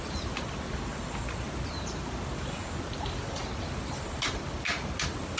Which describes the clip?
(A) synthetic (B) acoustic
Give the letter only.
B